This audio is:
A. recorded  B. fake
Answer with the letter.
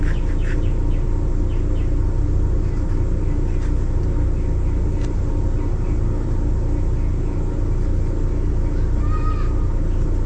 A